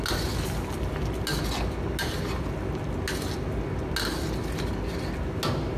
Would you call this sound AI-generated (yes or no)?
no